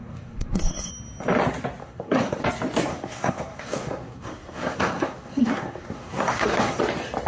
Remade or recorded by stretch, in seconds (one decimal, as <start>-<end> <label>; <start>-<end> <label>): 0.0-0.9 remade; 0.9-1.8 recorded; 1.8-2.4 remade; 2.4-2.9 recorded; 2.9-6.8 remade; 6.8-7.3 recorded